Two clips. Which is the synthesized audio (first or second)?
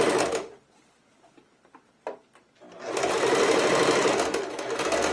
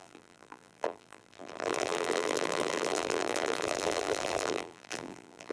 second